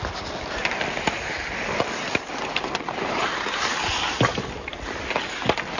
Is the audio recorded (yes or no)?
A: yes